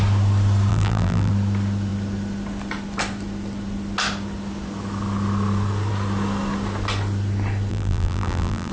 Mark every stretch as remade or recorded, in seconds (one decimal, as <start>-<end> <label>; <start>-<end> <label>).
0.0-0.7 recorded; 0.7-1.3 remade; 1.3-7.7 recorded; 7.7-8.7 remade